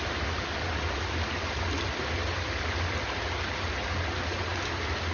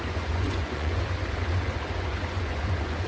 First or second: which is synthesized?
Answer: second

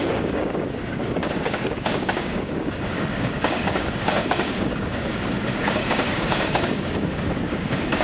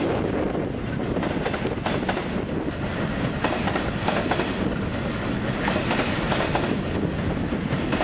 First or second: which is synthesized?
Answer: first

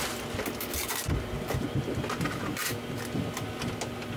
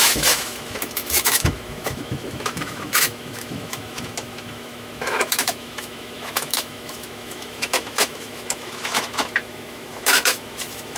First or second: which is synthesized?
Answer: second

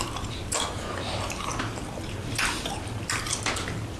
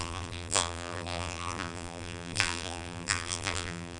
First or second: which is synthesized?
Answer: second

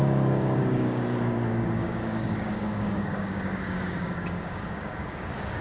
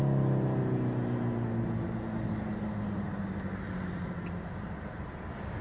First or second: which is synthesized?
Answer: first